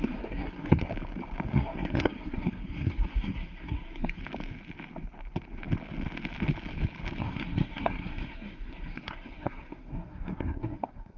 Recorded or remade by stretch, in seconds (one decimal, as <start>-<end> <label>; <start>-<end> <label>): 0.0-0.9 remade; 0.9-1.5 recorded; 1.5-4.2 remade; 4.2-7.2 recorded; 7.2-11.2 remade